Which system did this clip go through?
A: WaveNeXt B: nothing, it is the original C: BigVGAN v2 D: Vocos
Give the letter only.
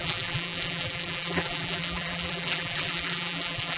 C